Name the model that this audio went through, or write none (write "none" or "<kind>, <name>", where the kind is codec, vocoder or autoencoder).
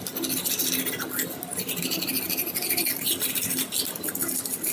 none